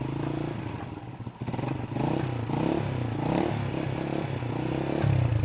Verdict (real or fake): real